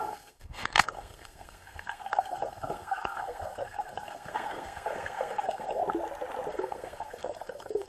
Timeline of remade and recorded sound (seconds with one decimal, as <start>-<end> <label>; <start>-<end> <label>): 0.0-5.8 remade; 5.8-6.5 recorded; 6.5-7.9 remade

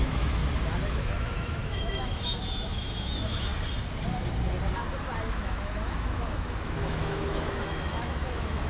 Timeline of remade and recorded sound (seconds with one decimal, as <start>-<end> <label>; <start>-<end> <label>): 0.0-0.4 remade; 0.4-0.9 recorded; 0.9-3.5 remade; 3.5-5.3 recorded; 5.3-8.7 remade

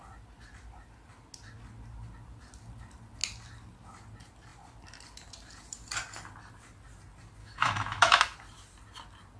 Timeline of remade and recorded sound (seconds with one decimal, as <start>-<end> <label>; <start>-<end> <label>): 0.0-7.4 recorded; 7.4-8.2 remade; 8.2-9.4 recorded

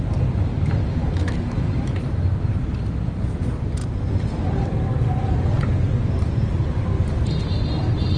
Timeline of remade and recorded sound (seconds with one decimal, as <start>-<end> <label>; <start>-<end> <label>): 0.0-1.0 recorded; 1.0-1.8 remade; 1.8-8.2 recorded

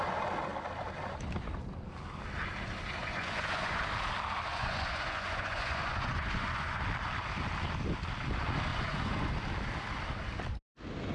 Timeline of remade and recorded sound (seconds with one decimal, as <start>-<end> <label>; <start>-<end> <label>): 0.0-3.0 recorded; 3.0-3.8 remade; 3.8-4.5 recorded; 4.5-6.8 remade; 6.8-8.7 recorded; 8.7-9.3 remade; 9.3-11.1 recorded